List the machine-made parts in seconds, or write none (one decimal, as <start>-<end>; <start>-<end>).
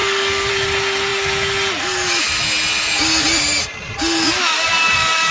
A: 0.0-0.5; 4.5-5.3